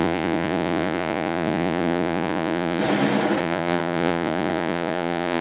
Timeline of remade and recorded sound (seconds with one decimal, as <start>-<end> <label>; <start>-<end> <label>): 0.0-2.8 remade; 2.8-3.4 recorded; 3.4-5.4 remade